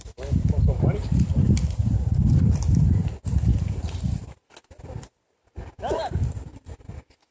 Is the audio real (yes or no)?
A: yes